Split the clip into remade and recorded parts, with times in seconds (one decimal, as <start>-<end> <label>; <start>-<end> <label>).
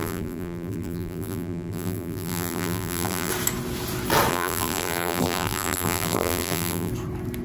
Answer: 0.0-3.3 remade; 3.3-4.3 recorded; 4.3-6.9 remade; 6.9-7.4 recorded